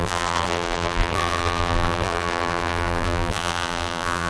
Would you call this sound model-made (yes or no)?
yes